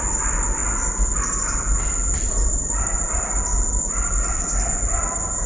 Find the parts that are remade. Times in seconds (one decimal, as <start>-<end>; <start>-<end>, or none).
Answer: none